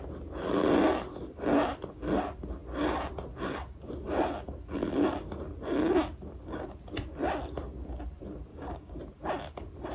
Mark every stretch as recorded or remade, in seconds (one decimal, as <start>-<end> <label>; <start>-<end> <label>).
0.0-8.5 recorded; 8.5-9.0 remade; 9.0-9.9 recorded